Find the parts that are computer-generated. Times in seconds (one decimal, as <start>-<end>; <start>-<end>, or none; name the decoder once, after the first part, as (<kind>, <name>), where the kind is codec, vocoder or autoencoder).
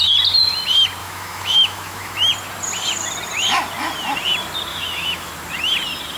1.0-2.3 (autoencoder, DAC-VAE); 4.7-5.3